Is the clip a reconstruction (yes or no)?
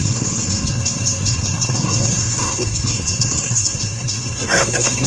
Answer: yes